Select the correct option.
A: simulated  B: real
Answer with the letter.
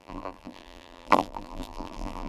A